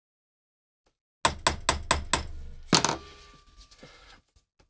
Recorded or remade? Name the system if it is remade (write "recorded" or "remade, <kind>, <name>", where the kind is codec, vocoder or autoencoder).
recorded